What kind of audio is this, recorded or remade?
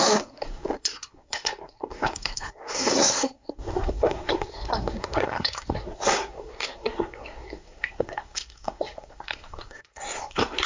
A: remade